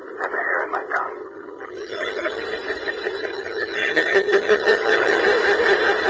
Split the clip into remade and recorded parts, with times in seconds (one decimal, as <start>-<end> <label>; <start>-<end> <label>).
0.0-1.2 recorded; 1.2-2.4 remade; 2.4-3.3 recorded; 3.3-5.2 remade; 5.2-6.1 recorded